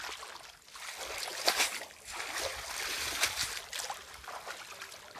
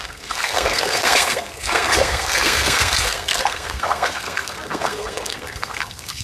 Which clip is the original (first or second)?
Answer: first